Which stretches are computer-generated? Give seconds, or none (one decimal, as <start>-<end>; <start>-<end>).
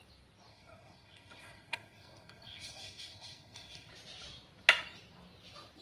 0.5-3.9